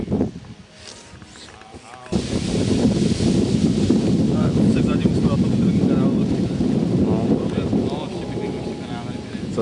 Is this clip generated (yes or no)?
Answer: no